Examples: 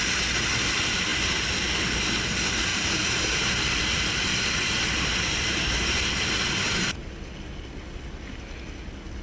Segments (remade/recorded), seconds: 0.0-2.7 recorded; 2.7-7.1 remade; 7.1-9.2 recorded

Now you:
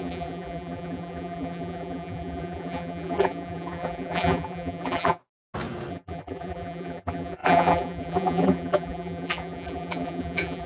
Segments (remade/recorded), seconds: 0.0-5.2 remade; 5.2-5.9 recorded; 5.9-10.7 remade

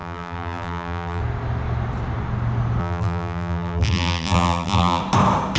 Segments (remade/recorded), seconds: 0.0-1.2 remade; 1.2-2.8 recorded; 2.8-5.0 remade; 5.0-5.6 recorded

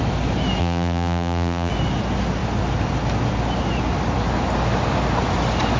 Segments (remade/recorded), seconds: 0.0-0.6 recorded; 0.6-1.7 remade; 1.7-5.8 recorded

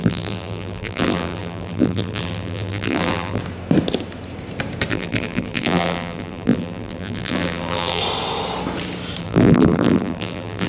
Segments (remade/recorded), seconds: 0.0-3.4 remade; 3.4-4.9 recorded; 4.9-8.0 remade; 8.0-9.2 recorded; 9.2-10.7 remade

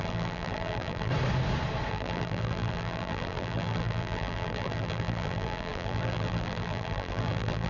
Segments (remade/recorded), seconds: 0.0-1.1 remade; 1.1-1.9 recorded; 1.9-7.7 remade